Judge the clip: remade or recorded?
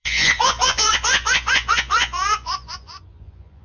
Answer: remade